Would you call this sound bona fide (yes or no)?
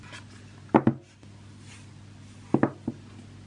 yes